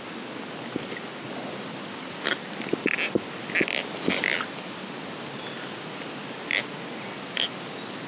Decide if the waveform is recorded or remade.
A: recorded